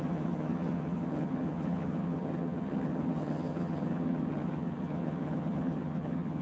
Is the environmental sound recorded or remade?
remade